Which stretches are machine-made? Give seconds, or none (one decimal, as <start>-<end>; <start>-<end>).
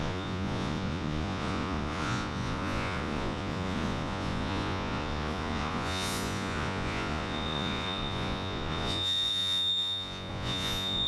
0.0-11.1